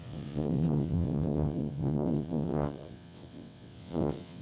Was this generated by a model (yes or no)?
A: yes